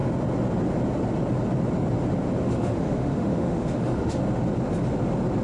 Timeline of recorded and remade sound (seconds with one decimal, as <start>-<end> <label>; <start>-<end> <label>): 0.0-2.4 recorded; 2.4-4.2 remade; 4.2-5.4 recorded